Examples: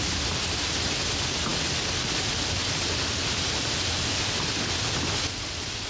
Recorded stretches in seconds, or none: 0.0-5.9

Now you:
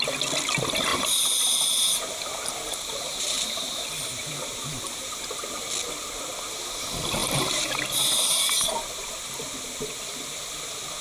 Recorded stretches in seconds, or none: 0.0-0.9; 5.2-7.2; 7.8-11.0

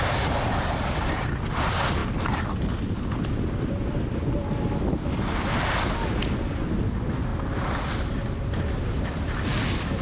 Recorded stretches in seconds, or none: 4.4-6.6; 7.3-8.3

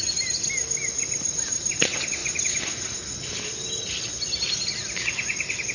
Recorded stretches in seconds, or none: 0.0-2.2; 4.1-5.7